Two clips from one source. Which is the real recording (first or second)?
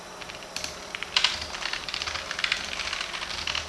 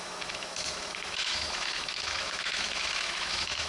first